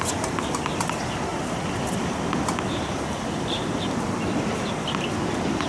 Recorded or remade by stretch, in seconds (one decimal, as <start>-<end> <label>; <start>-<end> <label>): 0.0-5.7 recorded